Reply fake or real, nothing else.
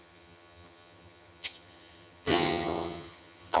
fake